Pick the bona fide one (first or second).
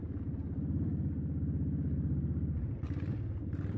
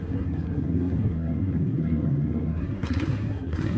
first